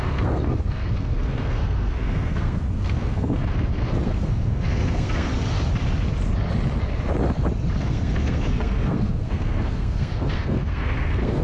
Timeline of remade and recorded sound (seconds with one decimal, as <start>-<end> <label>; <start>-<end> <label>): 0.0-5.3 remade; 5.3-7.8 recorded; 7.8-11.4 remade